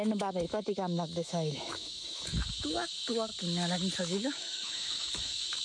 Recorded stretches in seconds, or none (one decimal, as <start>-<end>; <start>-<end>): 3.3-4.0